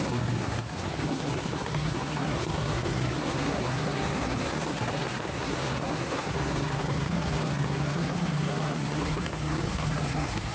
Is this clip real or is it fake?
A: fake